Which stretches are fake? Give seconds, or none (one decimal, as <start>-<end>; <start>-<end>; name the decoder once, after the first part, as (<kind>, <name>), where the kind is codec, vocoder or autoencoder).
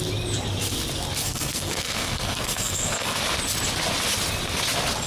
1.2-3.2 (codec, SNAC)